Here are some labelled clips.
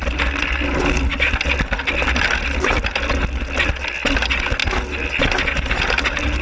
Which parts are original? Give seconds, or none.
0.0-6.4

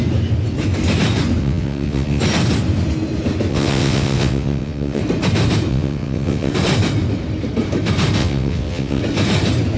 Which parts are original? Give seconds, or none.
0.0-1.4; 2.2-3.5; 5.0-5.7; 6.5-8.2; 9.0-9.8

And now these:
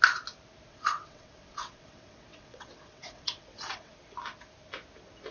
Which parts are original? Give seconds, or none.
0.0-0.7; 3.9-5.3

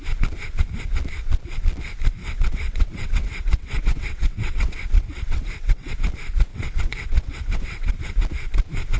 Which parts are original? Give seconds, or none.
0.0-2.2; 5.9-6.5; 7.9-9.0

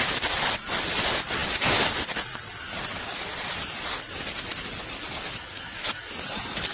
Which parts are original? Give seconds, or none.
0.0-6.7

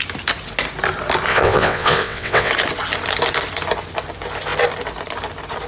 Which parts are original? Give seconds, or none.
0.0-1.3; 2.5-5.7